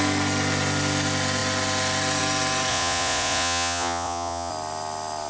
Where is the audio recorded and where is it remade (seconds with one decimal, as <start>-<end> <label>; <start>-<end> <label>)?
0.0-2.7 recorded; 2.7-4.5 remade; 4.5-5.3 recorded